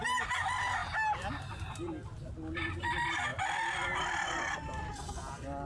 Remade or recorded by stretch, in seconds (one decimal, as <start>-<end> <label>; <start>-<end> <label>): 0.0-5.7 recorded